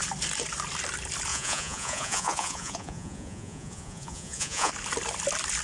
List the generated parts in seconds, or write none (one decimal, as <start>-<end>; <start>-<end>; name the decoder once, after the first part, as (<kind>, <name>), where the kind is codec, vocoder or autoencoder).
1.3-4.7 (vocoder, Vocos)